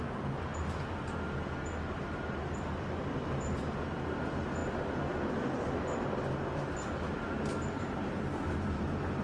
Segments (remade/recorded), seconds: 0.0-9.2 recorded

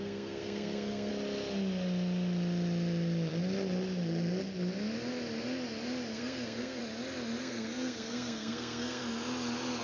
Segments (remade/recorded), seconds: 0.0-1.1 remade; 1.1-6.1 recorded; 6.1-6.8 remade; 6.8-7.4 recorded; 7.4-9.0 remade; 9.0-9.8 recorded

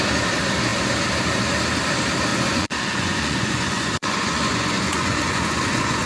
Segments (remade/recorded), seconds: 0.0-2.3 recorded; 2.3-6.1 remade

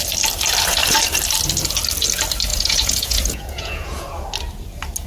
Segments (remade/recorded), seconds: 0.0-2.5 recorded; 2.5-4.2 remade; 4.2-5.1 recorded